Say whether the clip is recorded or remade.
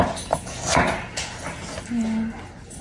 recorded